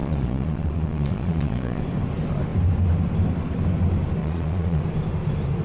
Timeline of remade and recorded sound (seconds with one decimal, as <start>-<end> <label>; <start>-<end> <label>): 0.0-1.8 remade; 1.8-4.2 recorded; 4.2-4.8 remade; 4.8-5.6 recorded